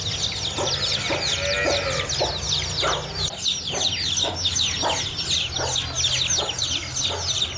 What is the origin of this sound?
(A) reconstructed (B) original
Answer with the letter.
B